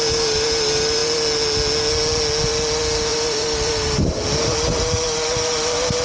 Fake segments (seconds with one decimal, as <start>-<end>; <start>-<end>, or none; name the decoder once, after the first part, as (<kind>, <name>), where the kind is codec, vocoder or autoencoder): 3.1-3.7 (vocoder, BigVGAN v2)

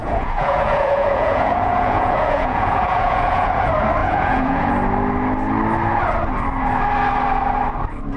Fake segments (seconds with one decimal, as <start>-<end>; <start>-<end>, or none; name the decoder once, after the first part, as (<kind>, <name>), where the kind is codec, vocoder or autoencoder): 0.0-3.5 (vocoder, Vocos); 4.0-4.7

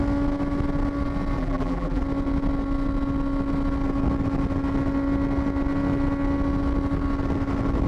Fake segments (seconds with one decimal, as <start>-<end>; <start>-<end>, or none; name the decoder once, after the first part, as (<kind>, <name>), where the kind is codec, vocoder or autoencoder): 1.4-2.0 (vocoder, BigVGAN v2)

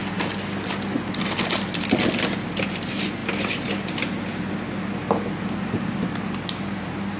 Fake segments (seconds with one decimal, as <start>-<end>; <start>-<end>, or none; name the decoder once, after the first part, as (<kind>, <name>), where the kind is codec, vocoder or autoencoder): none

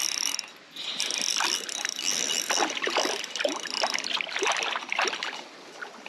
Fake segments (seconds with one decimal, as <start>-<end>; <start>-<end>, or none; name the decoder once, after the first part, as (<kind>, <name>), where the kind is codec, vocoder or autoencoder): none

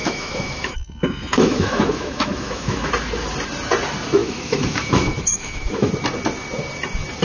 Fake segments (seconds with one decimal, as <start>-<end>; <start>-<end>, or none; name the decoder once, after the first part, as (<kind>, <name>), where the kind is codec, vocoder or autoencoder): 0.0-2.9 (autoencoder, DAC-VAE); 4.2-5.9

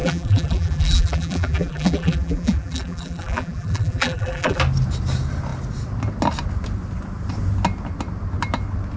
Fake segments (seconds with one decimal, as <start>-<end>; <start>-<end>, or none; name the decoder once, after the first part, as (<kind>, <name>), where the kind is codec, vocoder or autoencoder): 0.0-4.6 (vocoder, BigVGAN v2)